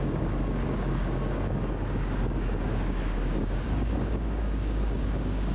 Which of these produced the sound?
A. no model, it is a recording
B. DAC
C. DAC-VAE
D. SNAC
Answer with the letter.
B